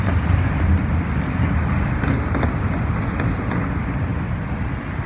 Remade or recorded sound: recorded